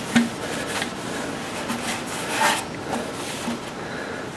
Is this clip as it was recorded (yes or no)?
yes